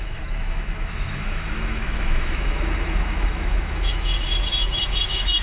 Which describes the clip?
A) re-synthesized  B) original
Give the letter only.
A